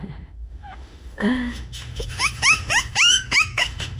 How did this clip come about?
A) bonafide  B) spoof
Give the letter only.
B